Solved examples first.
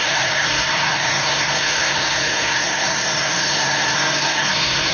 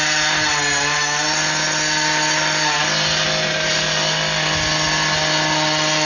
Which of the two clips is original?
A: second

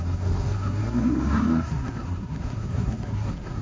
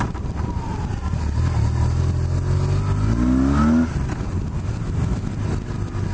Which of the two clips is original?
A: second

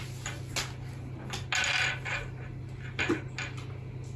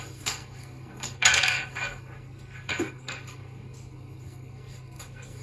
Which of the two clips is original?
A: first